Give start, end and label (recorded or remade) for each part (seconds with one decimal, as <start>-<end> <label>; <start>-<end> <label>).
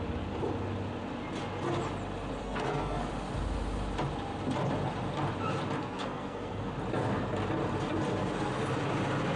0.0-2.4 recorded; 2.4-3.1 remade; 3.1-5.8 recorded; 5.8-6.7 remade; 6.7-9.4 recorded